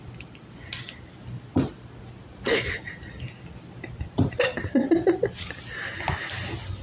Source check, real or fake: real